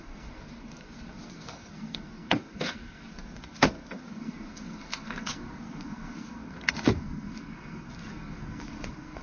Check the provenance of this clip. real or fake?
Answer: fake